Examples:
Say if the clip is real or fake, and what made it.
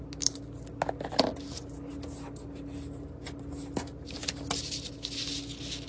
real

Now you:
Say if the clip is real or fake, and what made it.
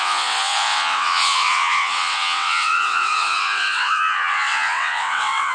fake, vocoder, WaveNeXt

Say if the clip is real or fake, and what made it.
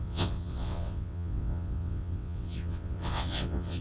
fake, vocoder, WaveNeXt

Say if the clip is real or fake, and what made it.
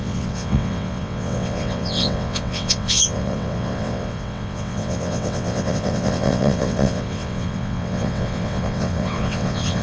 fake, vocoder, WaveNeXt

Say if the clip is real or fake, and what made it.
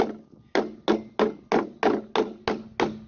real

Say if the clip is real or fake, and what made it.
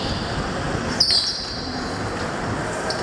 real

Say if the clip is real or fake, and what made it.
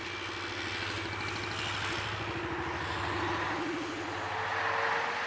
real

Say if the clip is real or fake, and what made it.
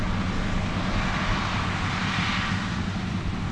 real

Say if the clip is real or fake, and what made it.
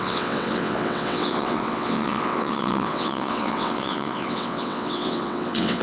fake, vocoder, WaveNeXt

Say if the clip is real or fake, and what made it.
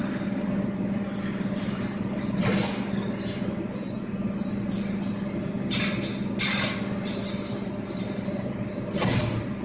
real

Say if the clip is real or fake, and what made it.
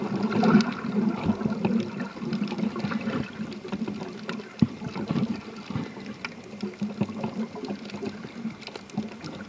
real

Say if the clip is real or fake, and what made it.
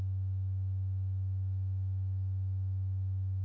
real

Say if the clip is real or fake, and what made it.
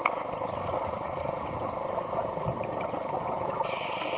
real